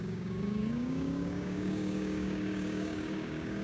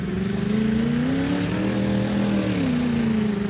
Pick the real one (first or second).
second